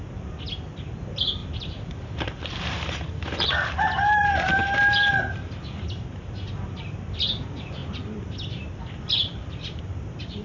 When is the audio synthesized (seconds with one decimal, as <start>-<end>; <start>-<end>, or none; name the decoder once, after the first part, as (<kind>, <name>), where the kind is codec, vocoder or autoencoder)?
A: 1.4-3.7 (vocoder, BigVGAN v2); 4.6-5.1